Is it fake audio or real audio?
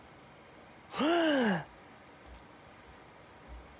real